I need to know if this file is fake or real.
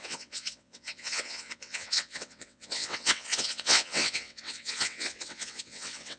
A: fake